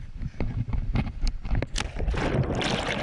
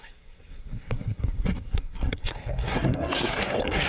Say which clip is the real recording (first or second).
first